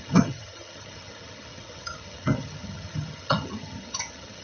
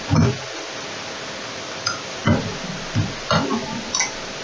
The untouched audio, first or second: second